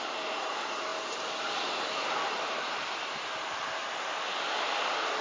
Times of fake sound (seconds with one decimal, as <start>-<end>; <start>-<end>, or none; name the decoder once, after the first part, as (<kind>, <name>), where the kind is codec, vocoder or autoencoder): 0.0-3.8 (vocoder, BigVGAN v2); 4.6-5.2